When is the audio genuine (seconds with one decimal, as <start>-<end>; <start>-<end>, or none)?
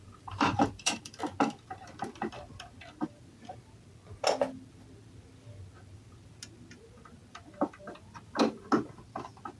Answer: 1.2-9.6